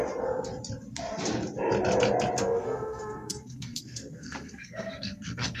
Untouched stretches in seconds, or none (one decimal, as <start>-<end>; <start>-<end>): 0.0-2.4